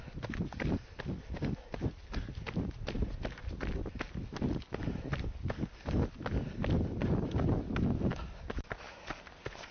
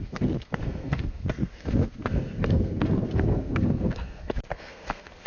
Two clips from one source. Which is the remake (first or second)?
second